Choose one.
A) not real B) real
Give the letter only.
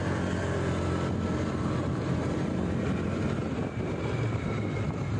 B